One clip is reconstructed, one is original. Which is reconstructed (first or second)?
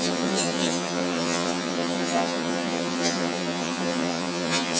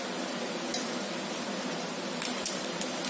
first